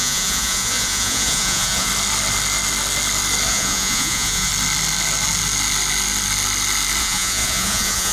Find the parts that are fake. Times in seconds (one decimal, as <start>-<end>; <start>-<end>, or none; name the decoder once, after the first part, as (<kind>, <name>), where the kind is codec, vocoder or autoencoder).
0.0-1.9 (vocoder, Vocos); 3.5-4.5; 7.0-8.1